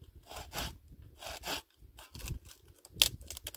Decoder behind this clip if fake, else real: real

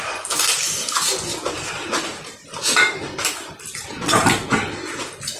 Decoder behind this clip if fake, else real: real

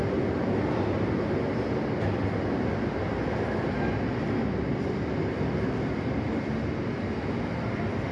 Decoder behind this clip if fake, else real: real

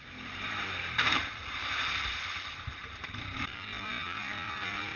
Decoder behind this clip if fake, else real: fake, vocoder, BigVGAN v2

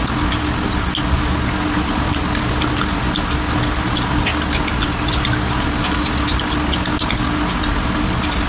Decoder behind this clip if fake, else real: real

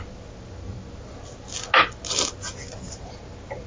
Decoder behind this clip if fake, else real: real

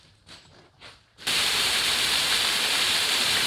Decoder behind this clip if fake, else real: fake, vocoder, BigVGAN v2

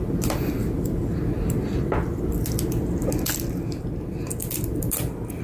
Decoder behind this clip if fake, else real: real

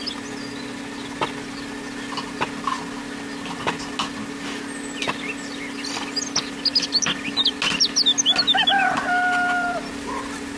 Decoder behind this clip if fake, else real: real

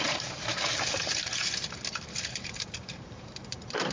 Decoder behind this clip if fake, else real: fake, vocoder, BigVGAN v2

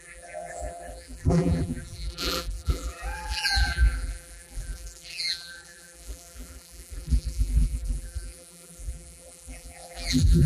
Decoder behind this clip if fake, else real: fake, vocoder, BigVGAN v2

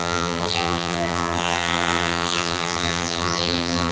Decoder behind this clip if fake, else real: fake, vocoder, BigVGAN v2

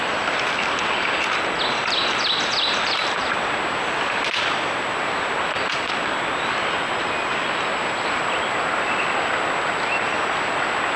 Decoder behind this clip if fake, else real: real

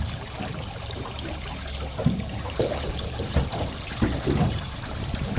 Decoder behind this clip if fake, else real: fake, vocoder, BigVGAN v2